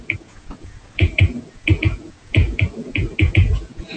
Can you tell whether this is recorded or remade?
remade